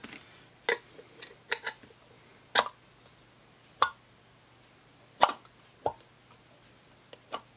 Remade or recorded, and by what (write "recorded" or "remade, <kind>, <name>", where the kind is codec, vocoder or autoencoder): recorded